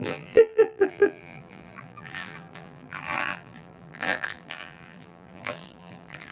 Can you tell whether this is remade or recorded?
remade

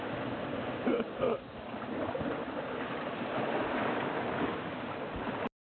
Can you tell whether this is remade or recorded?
recorded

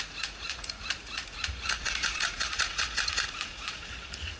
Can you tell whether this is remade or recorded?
remade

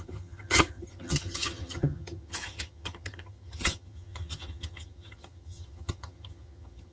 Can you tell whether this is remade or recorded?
remade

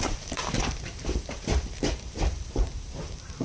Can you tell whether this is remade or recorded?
remade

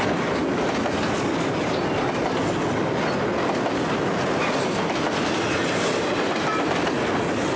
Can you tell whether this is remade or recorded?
recorded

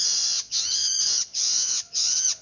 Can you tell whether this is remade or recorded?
remade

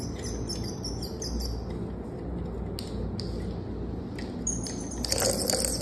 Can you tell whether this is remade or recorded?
recorded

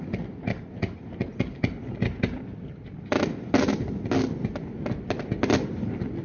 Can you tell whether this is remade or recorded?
recorded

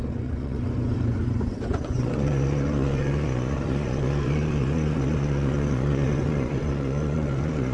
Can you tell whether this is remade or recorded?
remade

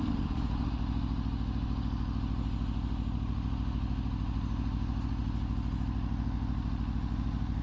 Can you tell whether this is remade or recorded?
recorded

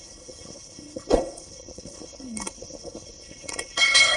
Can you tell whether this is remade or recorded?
remade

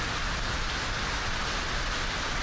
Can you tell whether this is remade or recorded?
recorded